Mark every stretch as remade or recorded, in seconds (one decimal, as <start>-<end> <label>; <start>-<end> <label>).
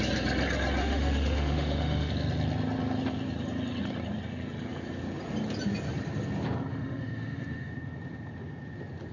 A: 0.0-0.8 recorded; 0.8-2.1 remade; 2.1-6.7 recorded; 6.7-7.7 remade; 7.7-9.1 recorded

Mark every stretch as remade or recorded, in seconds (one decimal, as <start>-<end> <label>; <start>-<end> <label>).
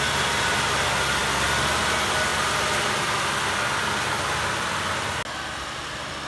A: 0.0-6.3 recorded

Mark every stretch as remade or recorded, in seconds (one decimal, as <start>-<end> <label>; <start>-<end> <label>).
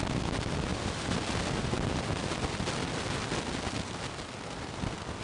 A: 0.0-5.2 recorded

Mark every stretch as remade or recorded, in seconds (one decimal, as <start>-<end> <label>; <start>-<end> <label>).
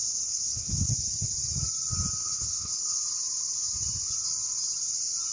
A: 0.0-0.9 remade; 0.9-2.2 recorded; 2.2-3.0 remade; 3.0-5.3 recorded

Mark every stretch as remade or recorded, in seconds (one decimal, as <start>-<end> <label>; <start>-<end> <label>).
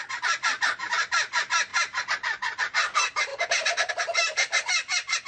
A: 0.0-3.3 recorded; 3.3-3.9 remade; 3.9-5.3 recorded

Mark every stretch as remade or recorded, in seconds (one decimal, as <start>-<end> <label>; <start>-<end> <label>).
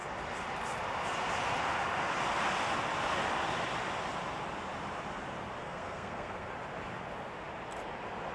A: 0.0-5.6 recorded; 5.6-6.5 remade; 6.5-8.3 recorded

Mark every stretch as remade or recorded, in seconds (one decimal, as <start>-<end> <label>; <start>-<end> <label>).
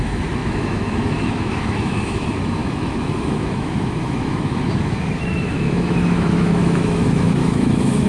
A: 0.0-8.1 remade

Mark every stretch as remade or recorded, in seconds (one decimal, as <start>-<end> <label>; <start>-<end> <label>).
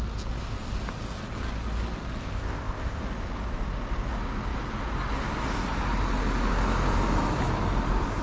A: 0.0-2.2 recorded; 2.2-3.0 remade; 3.0-8.2 recorded